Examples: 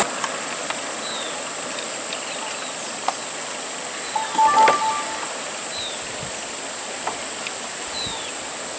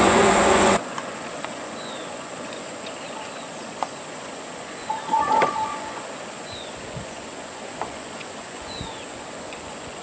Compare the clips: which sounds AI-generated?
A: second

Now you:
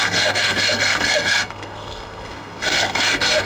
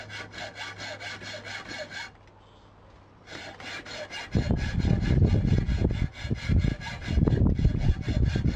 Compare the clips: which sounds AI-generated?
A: first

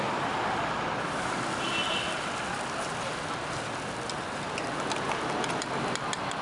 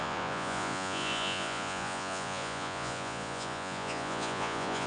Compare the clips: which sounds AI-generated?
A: second